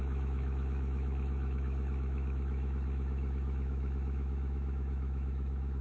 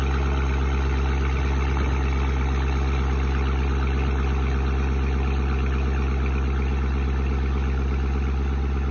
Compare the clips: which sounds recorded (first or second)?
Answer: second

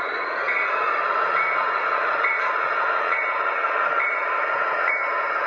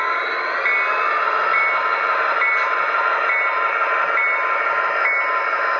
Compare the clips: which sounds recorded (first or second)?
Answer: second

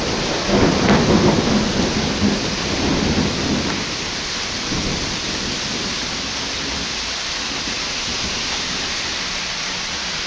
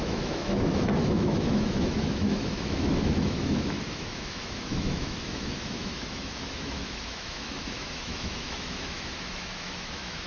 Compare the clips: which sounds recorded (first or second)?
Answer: first